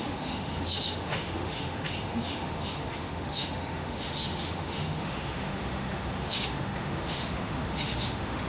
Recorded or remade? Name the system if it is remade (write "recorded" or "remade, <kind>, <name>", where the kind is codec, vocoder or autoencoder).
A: remade, autoencoder, DAC-VAE